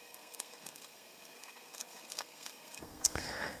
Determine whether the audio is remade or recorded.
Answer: remade